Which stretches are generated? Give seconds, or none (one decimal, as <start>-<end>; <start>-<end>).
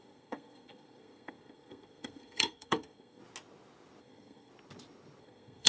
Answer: 0.0-3.2; 4.0-4.5; 5.2-5.7